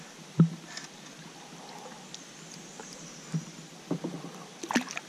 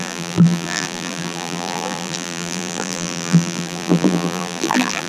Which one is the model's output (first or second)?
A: second